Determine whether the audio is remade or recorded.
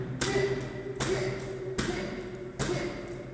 recorded